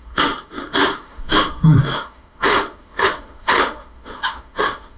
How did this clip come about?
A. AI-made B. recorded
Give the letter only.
A